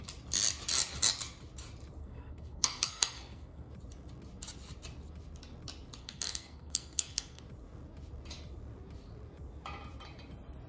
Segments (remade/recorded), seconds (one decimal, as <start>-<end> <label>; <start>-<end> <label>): 0.0-2.0 recorded; 2.0-3.7 remade; 3.7-6.0 recorded; 6.0-7.4 remade; 7.4-10.7 recorded